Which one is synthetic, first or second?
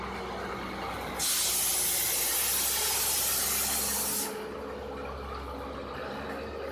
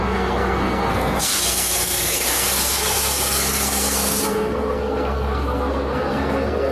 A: second